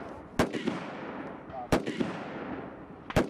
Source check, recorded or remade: recorded